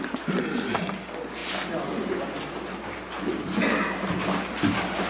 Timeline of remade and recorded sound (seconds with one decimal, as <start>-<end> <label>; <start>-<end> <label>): 0.0-5.1 recorded